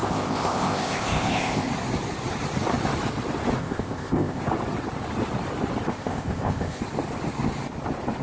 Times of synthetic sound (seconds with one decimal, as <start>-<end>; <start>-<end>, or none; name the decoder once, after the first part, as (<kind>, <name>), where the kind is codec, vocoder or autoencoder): 0.0-1.7 (codec, ZipCodec); 3.6-4.4; 5.9-6.8